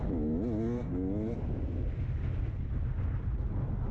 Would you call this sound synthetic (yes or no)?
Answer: no